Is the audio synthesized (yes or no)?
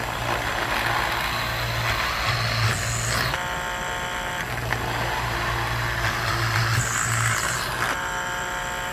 no